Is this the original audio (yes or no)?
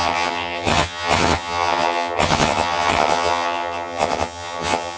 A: no